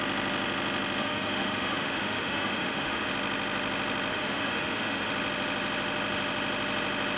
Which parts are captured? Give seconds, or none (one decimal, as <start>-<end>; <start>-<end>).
0.0-1.0; 3.1-4.1; 5.1-7.2